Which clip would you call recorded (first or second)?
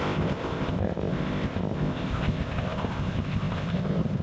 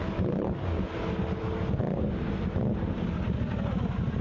second